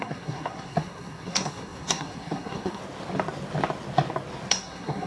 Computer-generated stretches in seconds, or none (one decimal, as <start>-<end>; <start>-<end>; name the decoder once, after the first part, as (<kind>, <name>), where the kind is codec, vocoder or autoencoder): 0.0-2.8 (codec, SNAC); 4.5-5.1